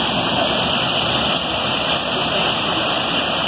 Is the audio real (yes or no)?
yes